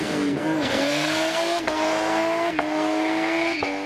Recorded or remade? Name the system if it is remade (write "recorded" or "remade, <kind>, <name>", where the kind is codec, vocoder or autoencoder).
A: remade, codec, SNAC